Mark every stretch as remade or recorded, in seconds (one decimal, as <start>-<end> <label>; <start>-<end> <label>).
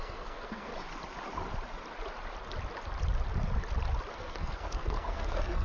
0.0-0.7 remade; 0.7-4.1 recorded; 4.1-5.6 remade